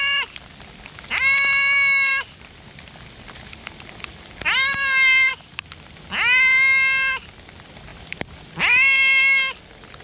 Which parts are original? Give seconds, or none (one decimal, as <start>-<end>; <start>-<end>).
0.0-10.0